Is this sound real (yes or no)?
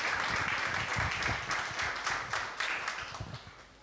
yes